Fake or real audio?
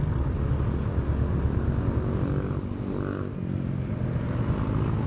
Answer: real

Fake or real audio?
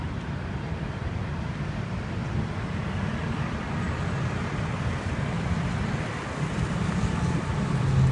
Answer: fake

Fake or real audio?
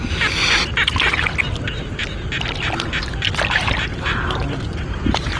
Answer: real